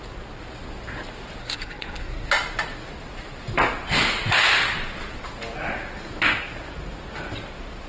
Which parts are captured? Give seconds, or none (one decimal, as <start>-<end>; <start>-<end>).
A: 0.0-1.4; 2.3-7.9